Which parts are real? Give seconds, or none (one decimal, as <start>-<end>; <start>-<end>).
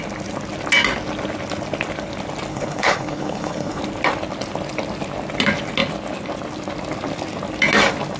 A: 0.0-2.5; 3.8-8.2